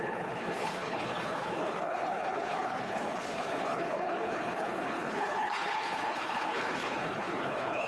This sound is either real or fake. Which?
fake